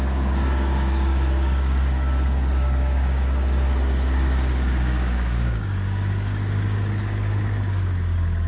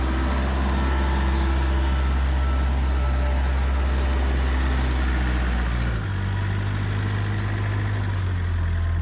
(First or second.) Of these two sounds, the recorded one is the second